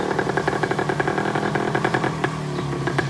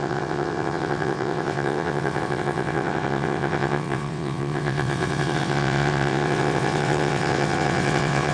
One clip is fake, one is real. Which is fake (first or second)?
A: second